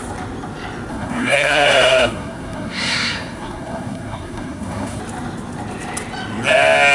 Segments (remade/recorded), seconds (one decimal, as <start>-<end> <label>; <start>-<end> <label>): 0.0-0.9 recorded; 0.9-5.0 remade; 5.0-6.9 recorded